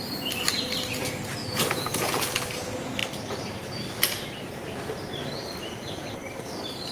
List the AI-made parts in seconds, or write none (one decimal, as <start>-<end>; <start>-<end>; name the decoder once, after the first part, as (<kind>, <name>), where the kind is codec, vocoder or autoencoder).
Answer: 1.4-2.1 (vocoder, Vocos)